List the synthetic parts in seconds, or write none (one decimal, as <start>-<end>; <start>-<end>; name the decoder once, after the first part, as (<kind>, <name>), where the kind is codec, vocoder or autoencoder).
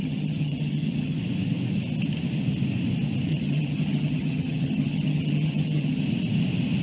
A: 0.0-1.2 (vocoder, HiFi-GAN); 3.3-6.0